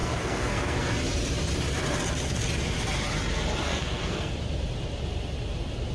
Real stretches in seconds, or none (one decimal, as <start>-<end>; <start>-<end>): 0.9-3.7; 4.3-5.9